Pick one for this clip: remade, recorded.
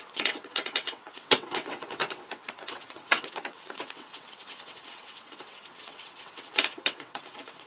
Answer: remade